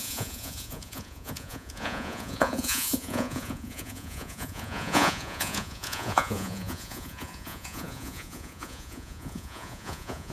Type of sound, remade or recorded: remade